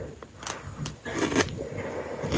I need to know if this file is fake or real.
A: real